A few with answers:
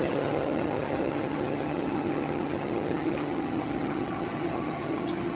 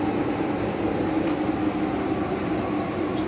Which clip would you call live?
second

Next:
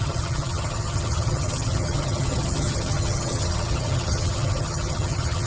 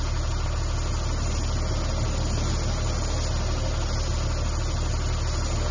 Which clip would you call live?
second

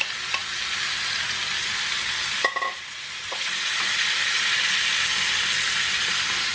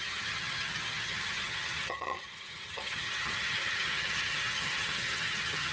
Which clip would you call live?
first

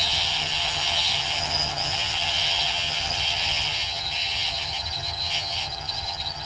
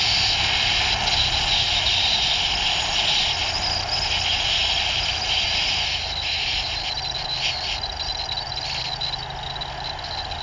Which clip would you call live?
second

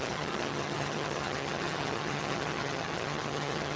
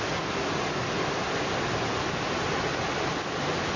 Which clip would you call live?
second